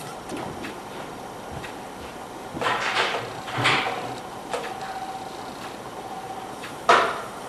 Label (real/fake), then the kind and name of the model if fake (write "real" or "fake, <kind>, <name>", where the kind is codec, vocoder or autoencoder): fake, vocoder, BigVGAN v2